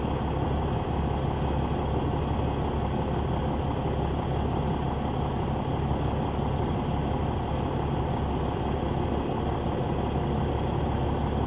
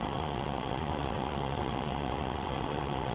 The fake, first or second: second